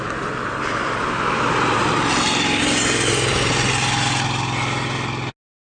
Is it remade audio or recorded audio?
recorded